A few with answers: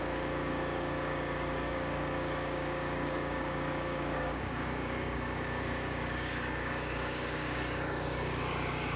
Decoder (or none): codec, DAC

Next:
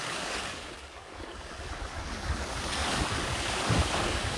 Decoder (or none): codec, DAC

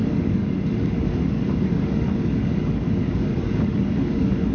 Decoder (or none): codec, DAC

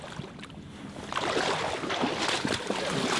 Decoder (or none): none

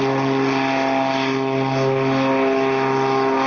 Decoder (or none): none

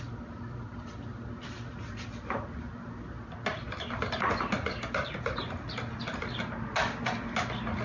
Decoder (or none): none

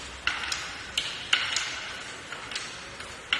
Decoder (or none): none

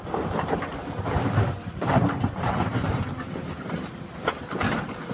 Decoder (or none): none